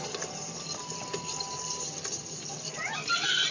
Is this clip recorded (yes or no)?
yes